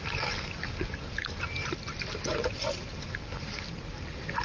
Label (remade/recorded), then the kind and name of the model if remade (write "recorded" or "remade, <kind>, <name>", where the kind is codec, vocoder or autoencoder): recorded